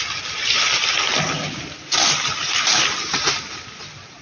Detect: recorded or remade recorded